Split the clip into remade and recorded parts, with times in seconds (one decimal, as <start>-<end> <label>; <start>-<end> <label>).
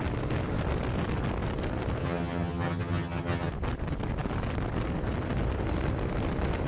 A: 0.0-2.0 recorded; 2.0-3.5 remade; 3.5-6.7 recorded